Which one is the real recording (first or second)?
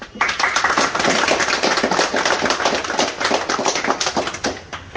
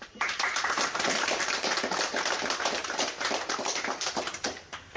first